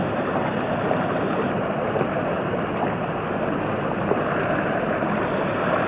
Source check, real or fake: real